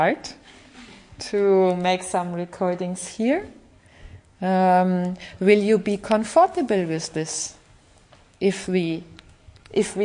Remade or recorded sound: remade